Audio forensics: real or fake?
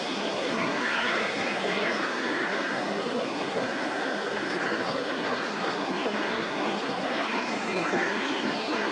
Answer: fake